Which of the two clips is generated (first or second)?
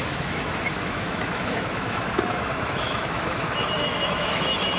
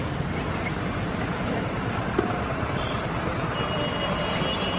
first